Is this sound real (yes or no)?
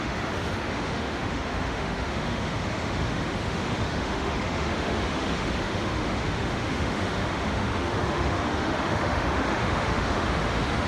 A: no